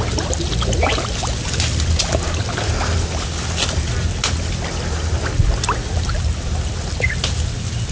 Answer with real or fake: real